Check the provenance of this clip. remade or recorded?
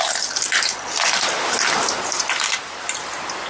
recorded